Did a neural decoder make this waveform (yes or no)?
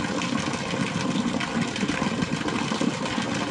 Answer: no